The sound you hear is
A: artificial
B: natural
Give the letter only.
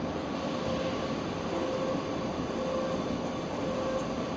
B